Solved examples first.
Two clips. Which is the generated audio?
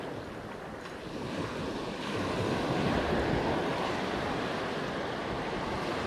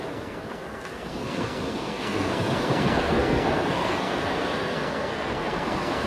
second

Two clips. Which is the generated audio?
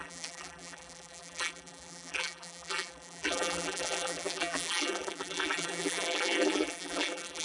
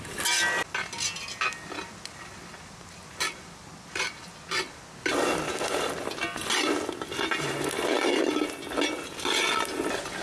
first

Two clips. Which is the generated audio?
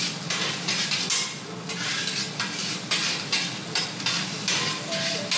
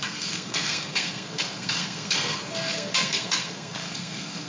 second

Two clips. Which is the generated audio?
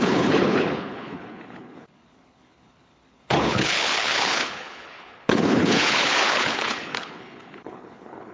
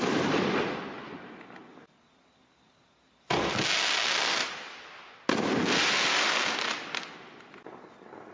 first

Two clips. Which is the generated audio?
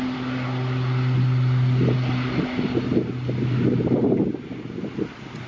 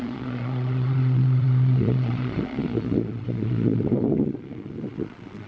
second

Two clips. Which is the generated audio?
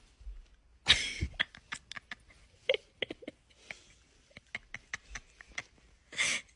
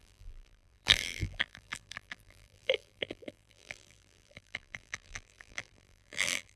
second